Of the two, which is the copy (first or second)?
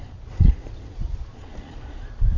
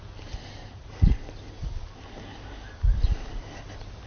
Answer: first